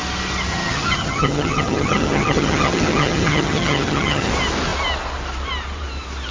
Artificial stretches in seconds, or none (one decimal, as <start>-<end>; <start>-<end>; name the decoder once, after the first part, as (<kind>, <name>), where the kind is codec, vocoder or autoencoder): 0.5-4.3 (vocoder, HiFi-GAN)